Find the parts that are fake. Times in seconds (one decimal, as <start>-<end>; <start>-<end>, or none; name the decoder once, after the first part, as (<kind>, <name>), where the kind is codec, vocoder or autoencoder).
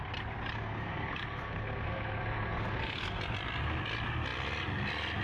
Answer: 0.5-3.2 (codec, SNAC)